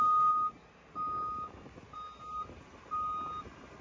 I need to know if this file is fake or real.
real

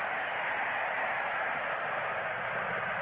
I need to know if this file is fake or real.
real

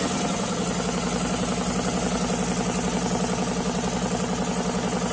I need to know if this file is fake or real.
real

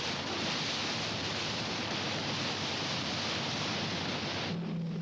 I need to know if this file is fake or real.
real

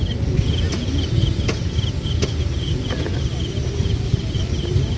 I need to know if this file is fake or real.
fake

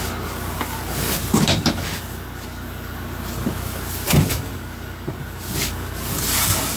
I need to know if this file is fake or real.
fake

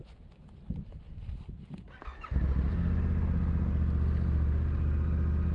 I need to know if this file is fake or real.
real